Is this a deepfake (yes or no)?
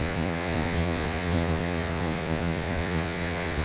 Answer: yes